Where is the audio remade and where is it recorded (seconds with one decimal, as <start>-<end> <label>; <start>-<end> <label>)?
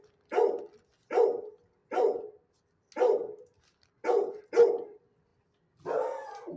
0.0-6.6 recorded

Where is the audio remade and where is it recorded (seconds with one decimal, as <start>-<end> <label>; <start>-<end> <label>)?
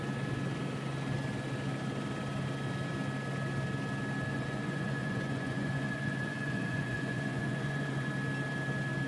0.0-4.3 recorded; 4.3-8.1 remade; 8.1-9.1 recorded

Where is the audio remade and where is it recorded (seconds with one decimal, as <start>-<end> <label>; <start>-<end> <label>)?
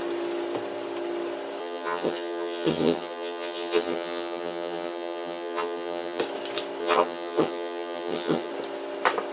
0.0-1.6 recorded; 1.6-6.2 remade; 6.2-6.8 recorded; 6.8-8.5 remade; 8.5-9.3 recorded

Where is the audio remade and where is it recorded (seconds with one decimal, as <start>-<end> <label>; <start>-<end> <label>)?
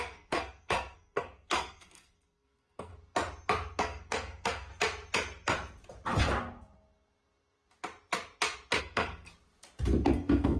0.0-2.9 remade; 2.9-3.8 recorded; 3.8-4.7 remade; 4.7-8.8 recorded; 8.8-9.3 remade; 9.3-10.1 recorded; 10.1-10.6 remade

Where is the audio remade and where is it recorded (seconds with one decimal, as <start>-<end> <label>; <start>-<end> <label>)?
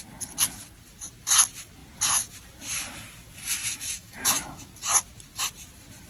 0.0-3.6 recorded; 3.6-4.7 remade; 4.7-6.1 recorded